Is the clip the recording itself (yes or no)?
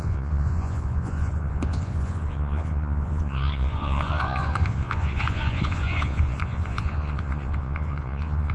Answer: no